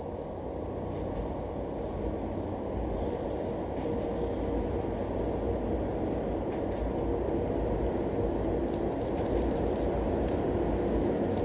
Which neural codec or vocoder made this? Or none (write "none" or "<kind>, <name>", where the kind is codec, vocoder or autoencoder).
none